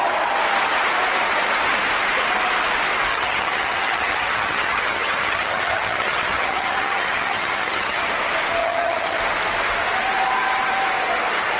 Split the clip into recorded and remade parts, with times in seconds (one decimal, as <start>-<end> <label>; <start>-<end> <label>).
0.0-3.1 recorded; 3.1-8.0 remade; 8.0-8.6 recorded; 8.6-9.2 remade; 9.2-11.6 recorded

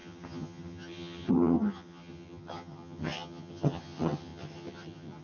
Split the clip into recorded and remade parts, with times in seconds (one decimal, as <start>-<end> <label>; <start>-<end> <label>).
0.0-5.2 remade